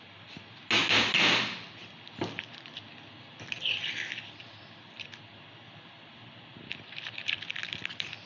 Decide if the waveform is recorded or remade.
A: recorded